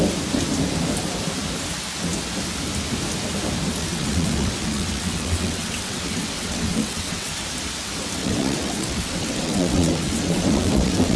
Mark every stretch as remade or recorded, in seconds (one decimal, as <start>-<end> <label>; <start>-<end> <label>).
0.0-3.8 recorded; 3.8-7.3 remade; 7.3-8.2 recorded; 8.2-11.2 remade

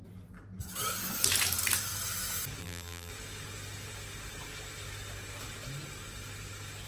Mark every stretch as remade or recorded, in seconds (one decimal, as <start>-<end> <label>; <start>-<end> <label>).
0.0-2.6 recorded; 2.6-3.1 remade; 3.1-6.9 recorded